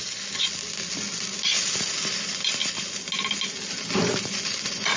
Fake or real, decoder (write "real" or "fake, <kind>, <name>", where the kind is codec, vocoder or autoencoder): real